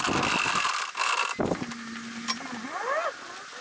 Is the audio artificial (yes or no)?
no